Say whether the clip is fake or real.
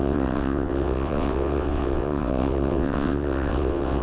fake